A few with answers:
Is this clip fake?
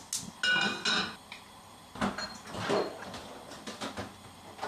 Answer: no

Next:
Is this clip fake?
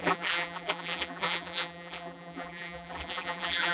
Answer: yes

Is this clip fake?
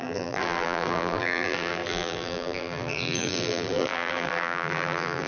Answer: yes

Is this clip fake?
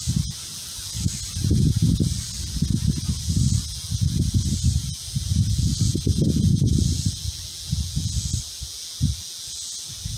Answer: no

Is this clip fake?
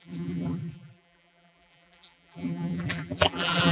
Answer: yes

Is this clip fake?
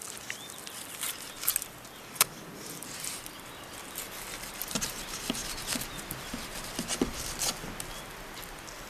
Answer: no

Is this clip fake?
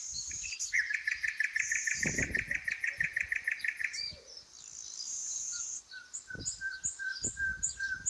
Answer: no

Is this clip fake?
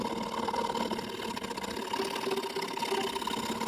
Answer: no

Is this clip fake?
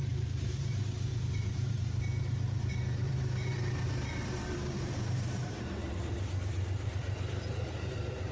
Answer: yes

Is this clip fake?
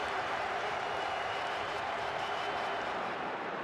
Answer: yes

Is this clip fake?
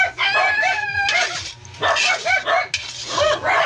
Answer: no